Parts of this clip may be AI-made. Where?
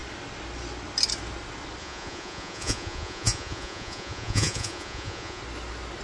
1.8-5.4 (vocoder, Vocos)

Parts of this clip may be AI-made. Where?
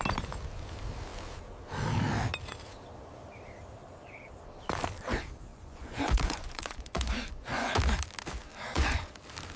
5.5-7.7 (vocoder, Vocos); 8.5-9.1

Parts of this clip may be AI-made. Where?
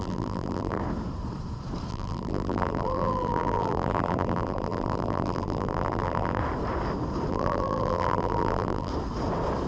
0.0-0.8 (vocoder, BigVGAN v2); 1.9-6.4; 7.3-8.9